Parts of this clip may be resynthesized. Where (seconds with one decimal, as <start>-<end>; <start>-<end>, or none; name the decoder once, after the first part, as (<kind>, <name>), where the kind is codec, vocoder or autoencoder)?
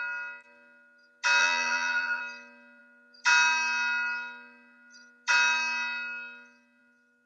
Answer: 1.4-2.2 (vocoder, BigVGAN v2)